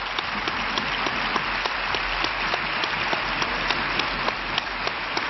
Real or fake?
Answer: real